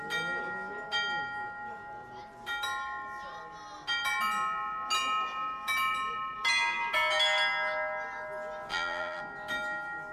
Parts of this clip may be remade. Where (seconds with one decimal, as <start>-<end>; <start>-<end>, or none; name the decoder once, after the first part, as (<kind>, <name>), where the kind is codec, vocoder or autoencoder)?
8.7-9.2 (vocoder, BigVGAN v2)